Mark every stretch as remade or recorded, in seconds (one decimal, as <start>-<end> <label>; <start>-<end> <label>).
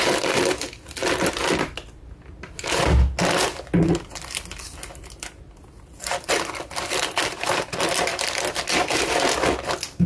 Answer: 0.0-10.1 recorded